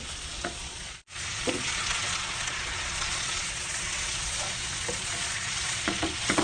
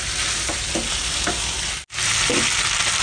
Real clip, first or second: second